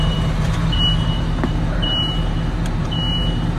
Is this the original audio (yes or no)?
no